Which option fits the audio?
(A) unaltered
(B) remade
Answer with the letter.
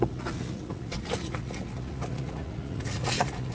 B